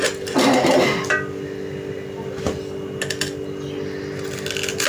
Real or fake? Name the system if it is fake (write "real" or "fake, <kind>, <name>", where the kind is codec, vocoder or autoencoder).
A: real